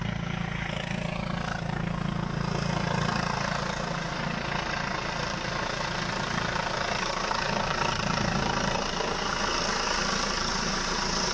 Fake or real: real